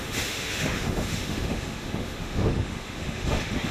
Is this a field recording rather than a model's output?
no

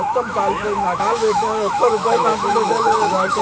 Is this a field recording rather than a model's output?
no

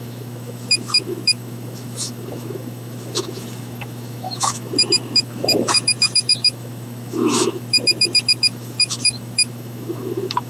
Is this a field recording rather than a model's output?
no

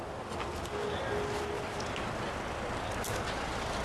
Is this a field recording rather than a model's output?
yes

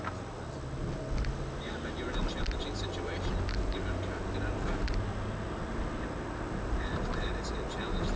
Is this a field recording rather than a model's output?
yes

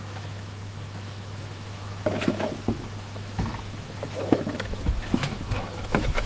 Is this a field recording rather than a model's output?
no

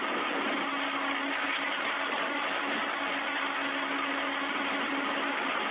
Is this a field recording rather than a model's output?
yes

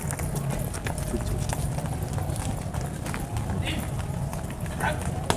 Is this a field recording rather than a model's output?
yes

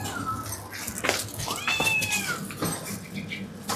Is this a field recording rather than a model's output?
yes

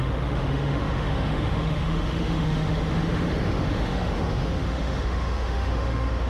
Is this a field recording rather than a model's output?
no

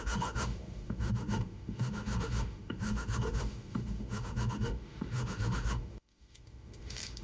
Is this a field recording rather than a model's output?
no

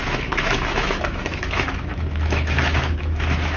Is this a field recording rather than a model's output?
no